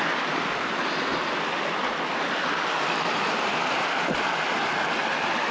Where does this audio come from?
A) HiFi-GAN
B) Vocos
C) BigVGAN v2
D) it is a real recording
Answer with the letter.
D